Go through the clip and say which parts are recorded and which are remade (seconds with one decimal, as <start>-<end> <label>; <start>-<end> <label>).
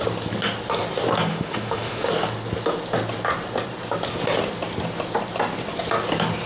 0.0-1.3 recorded; 1.3-2.1 remade; 2.1-6.5 recorded